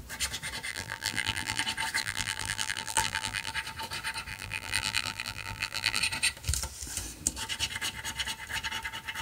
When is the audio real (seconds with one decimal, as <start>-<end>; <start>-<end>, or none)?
0.0-0.7; 1.6-2.0; 3.5-4.3; 6.0-9.2